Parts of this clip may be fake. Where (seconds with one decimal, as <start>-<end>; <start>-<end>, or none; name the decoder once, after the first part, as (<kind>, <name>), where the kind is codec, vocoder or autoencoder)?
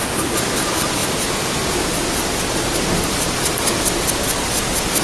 none